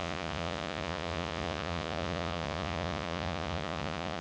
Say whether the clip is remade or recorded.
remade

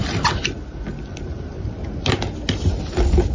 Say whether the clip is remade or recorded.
recorded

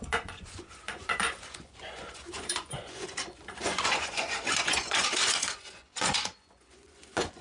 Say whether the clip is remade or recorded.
remade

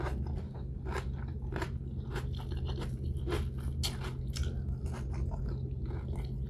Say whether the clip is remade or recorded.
recorded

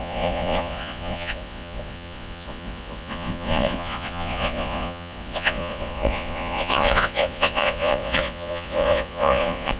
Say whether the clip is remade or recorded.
remade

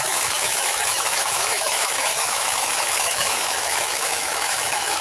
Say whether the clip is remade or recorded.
remade